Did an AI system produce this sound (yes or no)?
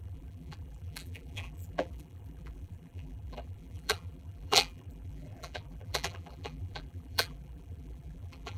yes